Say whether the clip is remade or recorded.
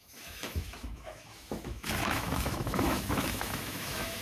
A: remade